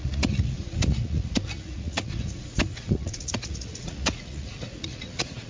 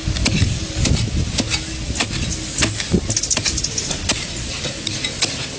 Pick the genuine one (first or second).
second